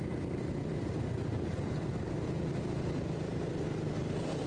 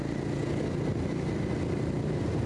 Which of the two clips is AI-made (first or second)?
first